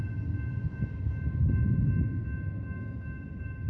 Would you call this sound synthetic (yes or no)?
no